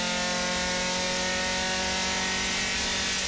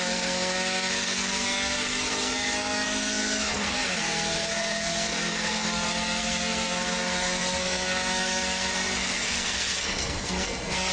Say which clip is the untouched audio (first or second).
first